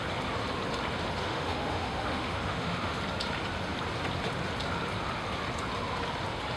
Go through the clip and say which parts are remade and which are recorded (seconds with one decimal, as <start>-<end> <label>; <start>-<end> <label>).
0.0-1.2 recorded; 1.2-3.0 remade; 3.0-6.6 recorded